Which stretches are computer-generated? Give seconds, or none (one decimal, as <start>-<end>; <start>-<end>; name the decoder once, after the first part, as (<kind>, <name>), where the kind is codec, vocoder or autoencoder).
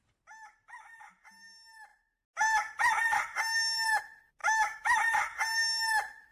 4.4-5.0 (autoencoder, DAC-VAE)